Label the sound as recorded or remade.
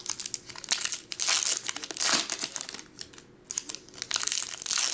recorded